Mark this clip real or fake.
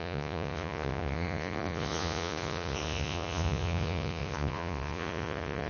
fake